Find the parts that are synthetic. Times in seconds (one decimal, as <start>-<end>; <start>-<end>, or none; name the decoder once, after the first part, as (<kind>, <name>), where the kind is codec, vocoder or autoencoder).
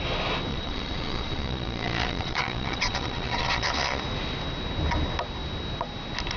0.5-4.0 (vocoder, Vocos)